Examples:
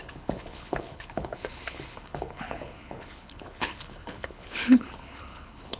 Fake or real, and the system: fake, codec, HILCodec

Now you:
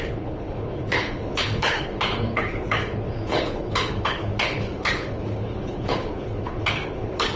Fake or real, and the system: fake, codec, HILCodec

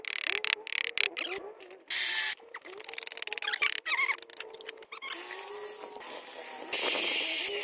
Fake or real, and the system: real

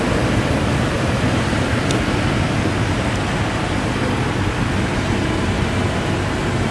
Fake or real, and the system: real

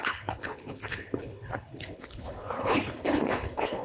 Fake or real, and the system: fake, codec, HILCodec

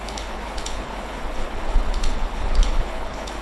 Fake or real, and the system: fake, codec, HILCodec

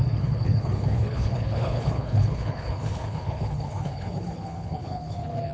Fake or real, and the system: fake, codec, HILCodec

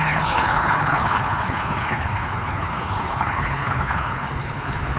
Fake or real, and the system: fake, codec, HILCodec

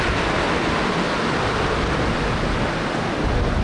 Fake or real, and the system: real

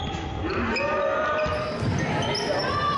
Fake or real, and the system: real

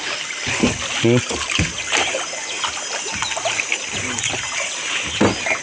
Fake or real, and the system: real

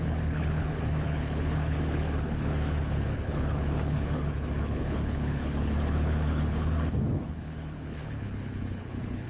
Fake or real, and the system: fake, codec, HILCodec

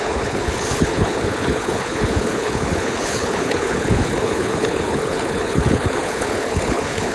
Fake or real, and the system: fake, codec, HILCodec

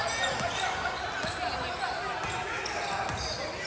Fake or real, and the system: real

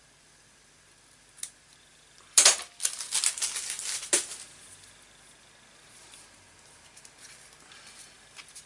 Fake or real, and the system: real